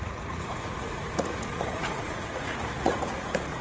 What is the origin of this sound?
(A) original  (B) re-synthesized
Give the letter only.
B